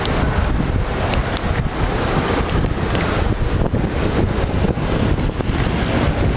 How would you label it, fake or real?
real